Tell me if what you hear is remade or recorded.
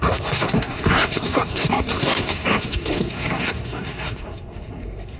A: remade